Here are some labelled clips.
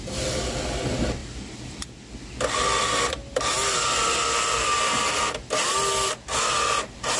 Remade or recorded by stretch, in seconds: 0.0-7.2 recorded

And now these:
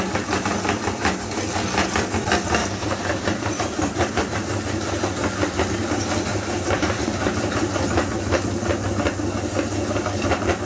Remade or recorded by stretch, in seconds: 0.0-2.6 recorded; 2.6-5.0 remade; 5.0-6.3 recorded; 6.3-7.9 remade; 7.9-10.7 recorded

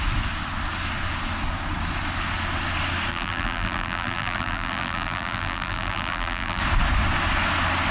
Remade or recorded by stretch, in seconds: 0.0-3.1 recorded; 3.1-6.6 remade; 6.6-7.9 recorded

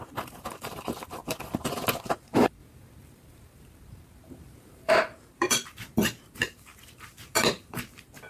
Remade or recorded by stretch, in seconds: 0.0-1.2 remade; 1.2-2.0 recorded; 2.0-8.3 remade

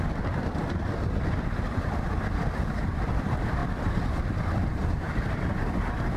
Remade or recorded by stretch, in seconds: 0.0-6.2 recorded